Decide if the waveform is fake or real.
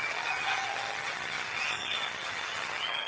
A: fake